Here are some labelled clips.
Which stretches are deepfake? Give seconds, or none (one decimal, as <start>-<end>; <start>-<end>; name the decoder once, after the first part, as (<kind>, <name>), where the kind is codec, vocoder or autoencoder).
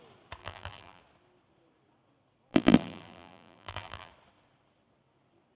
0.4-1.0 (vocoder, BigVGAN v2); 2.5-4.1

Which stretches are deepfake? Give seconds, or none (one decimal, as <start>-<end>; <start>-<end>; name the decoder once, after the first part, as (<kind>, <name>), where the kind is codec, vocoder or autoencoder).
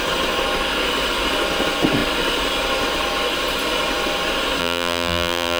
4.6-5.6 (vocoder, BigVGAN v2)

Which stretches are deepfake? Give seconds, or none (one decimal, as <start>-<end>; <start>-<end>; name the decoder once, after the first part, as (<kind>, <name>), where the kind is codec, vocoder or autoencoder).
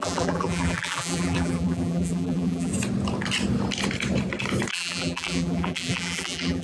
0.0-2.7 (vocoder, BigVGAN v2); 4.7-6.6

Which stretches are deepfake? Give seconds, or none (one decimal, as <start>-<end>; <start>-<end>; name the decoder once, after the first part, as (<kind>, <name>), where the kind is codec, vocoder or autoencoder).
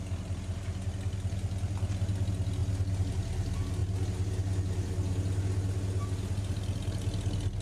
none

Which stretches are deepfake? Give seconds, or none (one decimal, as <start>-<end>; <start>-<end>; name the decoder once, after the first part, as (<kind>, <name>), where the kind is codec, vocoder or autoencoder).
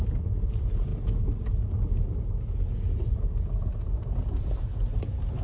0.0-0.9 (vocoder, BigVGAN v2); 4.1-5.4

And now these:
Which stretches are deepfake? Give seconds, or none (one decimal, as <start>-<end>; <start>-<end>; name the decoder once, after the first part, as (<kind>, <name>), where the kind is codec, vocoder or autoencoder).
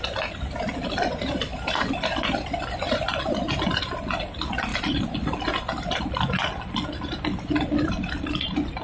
1.5-3.1 (vocoder, BigVGAN v2); 4.7-6.0